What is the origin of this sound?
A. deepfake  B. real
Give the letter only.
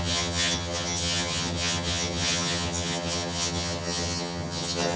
A